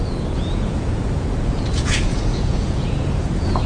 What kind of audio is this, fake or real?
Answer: fake